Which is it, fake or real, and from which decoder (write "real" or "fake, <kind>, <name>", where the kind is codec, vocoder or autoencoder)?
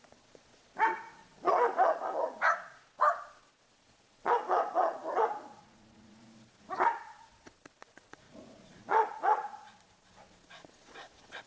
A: fake, vocoder, Vocos